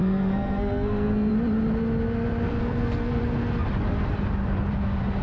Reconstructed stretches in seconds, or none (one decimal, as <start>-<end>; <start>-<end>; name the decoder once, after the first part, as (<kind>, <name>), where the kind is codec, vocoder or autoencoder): 0.0-1.3 (codec, SNAC); 2.6-3.2